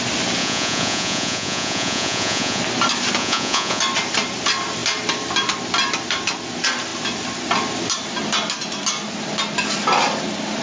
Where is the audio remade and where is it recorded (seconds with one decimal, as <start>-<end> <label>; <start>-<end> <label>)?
0.0-0.4 recorded; 0.4-2.6 remade; 2.6-3.2 recorded; 3.2-3.8 remade; 3.8-10.6 recorded